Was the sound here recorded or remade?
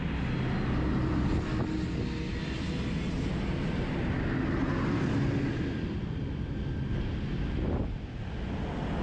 recorded